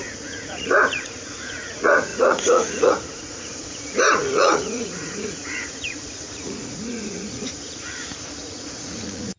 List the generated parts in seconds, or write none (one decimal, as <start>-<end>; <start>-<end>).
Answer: 0.0-9.4